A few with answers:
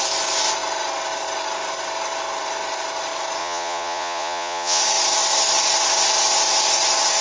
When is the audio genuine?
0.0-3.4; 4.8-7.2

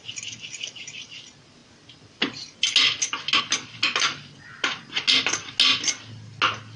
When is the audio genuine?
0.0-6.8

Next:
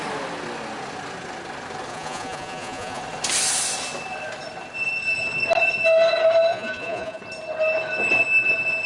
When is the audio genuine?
0.0-1.9; 3.0-6.5; 7.2-8.9

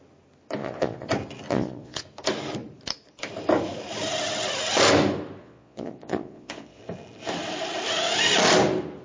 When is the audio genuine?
0.0-0.6; 1.1-1.5; 2.0-5.4; 6.8-9.0

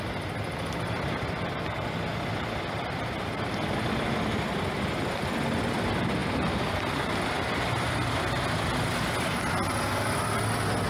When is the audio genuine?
0.0-10.9

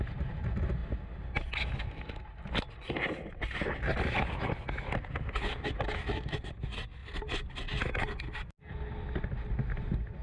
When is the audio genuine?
0.0-10.2

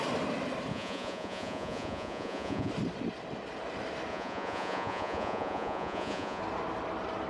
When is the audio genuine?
0.0-0.7; 2.7-4.1; 6.4-7.3